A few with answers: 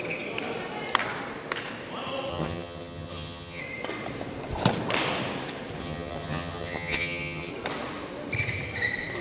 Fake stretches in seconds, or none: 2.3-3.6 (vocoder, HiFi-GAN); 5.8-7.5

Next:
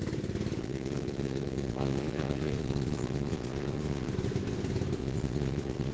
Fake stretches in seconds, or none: 0.6-4.1 (vocoder, Vocos); 5.0-5.9

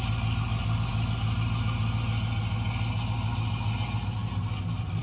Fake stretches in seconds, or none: none

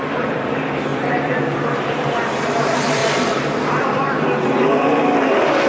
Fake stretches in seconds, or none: 0.0-3.0 (vocoder, BigVGAN v2); 3.8-5.7

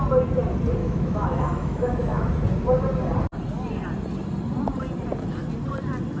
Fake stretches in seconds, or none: 0.8-2.3 (autoencoder, DAC-VAE)